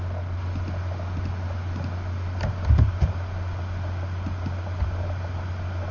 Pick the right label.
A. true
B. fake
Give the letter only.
A